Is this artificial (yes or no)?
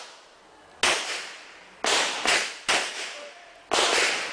no